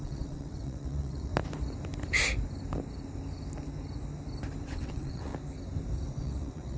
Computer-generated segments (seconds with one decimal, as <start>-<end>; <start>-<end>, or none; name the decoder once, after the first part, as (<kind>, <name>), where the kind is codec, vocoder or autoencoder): 0.0-1.3 (vocoder, WaveNeXt); 4.6-5.3; 6.2-6.8